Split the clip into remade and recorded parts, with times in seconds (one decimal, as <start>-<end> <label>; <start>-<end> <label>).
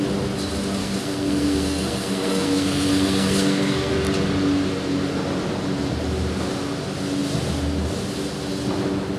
0.0-0.8 recorded; 0.8-3.9 remade; 3.9-9.2 recorded